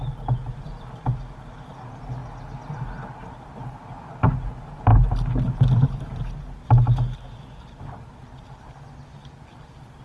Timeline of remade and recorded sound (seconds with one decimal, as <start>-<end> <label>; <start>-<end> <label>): 0.0-10.0 recorded